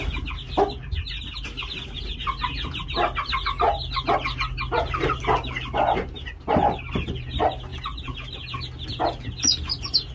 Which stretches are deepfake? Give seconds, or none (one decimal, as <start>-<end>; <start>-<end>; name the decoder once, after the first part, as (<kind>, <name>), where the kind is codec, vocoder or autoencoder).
none